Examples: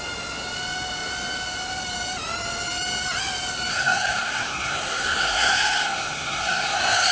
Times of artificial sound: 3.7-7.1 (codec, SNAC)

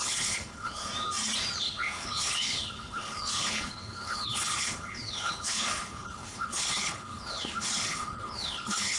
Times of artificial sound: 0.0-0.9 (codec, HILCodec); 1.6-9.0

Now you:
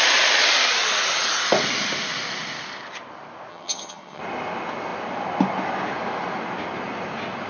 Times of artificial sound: 3.5-4.2 (vocoder, HiFi-GAN)

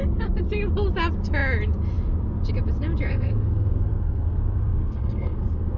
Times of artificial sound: 3.1-5.8 (codec, SNAC)